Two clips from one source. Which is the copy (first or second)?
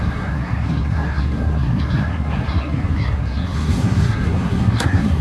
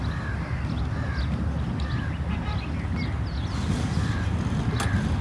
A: first